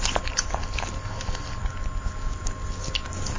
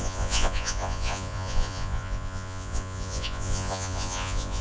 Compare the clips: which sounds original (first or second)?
first